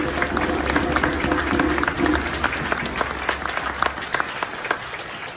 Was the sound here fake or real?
real